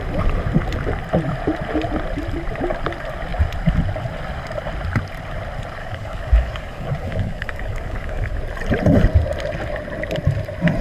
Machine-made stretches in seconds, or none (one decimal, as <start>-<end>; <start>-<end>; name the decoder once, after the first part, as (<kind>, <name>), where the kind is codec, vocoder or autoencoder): 5.8-8.4 (codec, DAC)